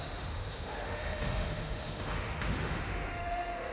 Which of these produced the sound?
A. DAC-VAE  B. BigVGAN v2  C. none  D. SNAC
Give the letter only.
A